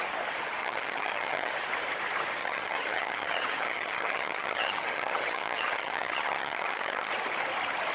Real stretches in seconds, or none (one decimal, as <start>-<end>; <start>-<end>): 0.0-0.6; 1.5-2.4; 7.1-7.9